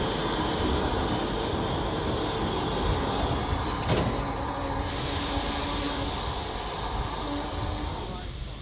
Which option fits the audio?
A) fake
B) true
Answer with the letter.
B